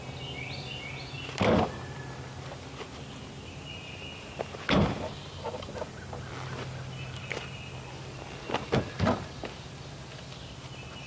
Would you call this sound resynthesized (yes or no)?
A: no